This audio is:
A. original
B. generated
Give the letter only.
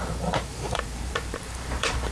B